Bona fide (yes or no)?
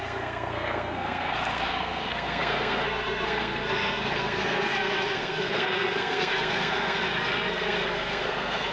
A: no